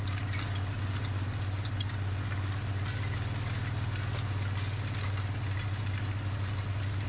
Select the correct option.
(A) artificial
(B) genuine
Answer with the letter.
B